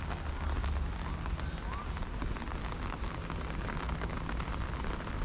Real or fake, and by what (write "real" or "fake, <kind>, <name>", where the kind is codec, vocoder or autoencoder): real